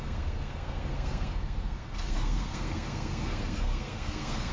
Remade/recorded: remade